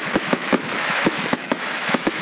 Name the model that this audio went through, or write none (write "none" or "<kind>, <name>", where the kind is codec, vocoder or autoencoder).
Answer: autoencoder, DAC-VAE